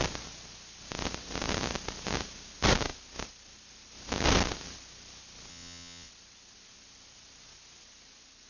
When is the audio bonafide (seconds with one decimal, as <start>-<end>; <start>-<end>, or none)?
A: 0.0-5.5; 6.1-8.5